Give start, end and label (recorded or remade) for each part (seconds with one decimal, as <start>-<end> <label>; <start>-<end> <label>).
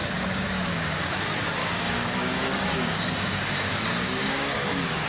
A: 0.0-1.2 remade; 1.2-1.6 recorded; 1.6-5.1 remade